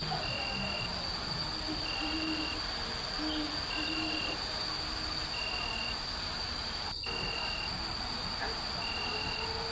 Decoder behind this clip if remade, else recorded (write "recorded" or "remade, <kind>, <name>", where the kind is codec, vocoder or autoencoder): recorded